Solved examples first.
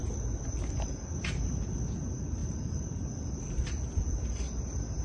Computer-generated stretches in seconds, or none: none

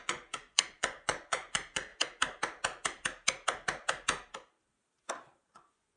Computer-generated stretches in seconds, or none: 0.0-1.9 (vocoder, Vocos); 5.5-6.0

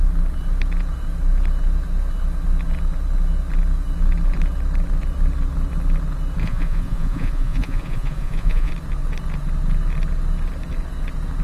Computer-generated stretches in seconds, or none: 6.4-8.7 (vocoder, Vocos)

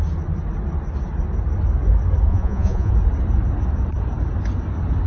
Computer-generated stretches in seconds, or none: 2.3-2.9 (vocoder, Vocos)

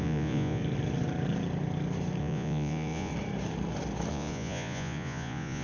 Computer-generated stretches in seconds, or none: 0.0-0.6 (vocoder, Vocos); 2.2-3.1; 4.1-5.6